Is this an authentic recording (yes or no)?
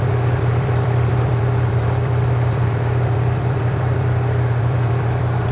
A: no